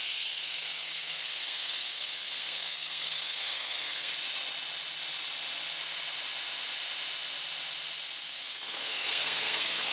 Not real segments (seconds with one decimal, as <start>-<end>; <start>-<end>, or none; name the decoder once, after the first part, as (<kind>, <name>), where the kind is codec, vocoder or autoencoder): 0.0-4.1 (codec, SNAC); 8.2-9.9